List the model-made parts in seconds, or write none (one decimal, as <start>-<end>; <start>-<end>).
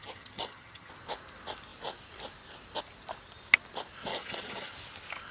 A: 0.0-0.9; 4.1-4.7